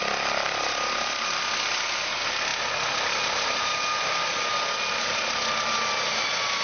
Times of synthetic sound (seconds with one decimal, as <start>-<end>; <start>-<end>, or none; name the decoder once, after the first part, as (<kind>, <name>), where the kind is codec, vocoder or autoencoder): none